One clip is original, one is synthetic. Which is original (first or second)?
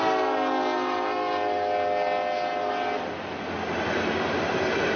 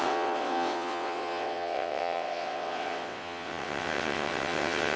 first